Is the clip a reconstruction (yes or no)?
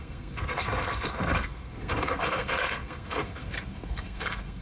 yes